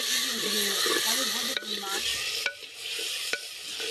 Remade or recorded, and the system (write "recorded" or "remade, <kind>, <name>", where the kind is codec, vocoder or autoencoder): recorded